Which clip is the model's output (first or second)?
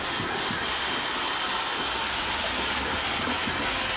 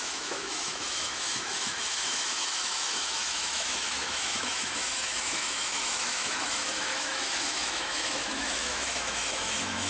second